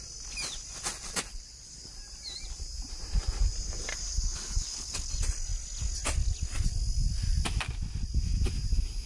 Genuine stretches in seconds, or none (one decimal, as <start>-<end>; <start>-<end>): 0.0-1.3; 1.9-3.9; 5.1-9.1